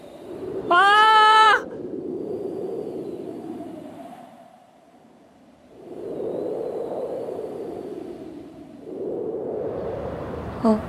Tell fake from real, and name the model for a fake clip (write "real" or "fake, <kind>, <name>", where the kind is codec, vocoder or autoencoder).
fake, vocoder, BigVGAN v2